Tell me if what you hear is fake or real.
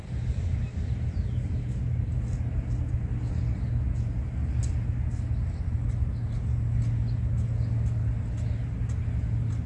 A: real